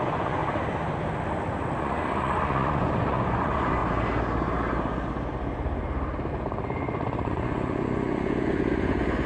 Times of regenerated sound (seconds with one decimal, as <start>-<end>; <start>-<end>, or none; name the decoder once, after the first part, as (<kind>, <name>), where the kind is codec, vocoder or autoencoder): 0.0-0.4 (vocoder, Vocos); 1.8-3.8; 6.3-9.3